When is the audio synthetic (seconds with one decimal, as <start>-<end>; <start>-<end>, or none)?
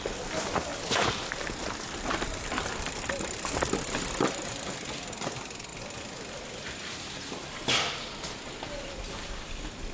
none